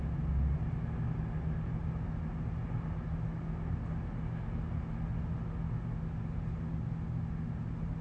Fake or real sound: real